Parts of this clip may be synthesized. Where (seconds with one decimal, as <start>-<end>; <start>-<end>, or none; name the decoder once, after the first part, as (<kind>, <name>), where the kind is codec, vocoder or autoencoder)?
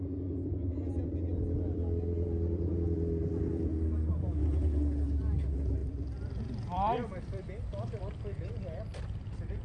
5.8-8.0 (vocoder, BigVGAN v2)